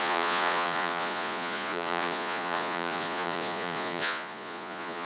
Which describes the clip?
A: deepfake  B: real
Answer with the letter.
A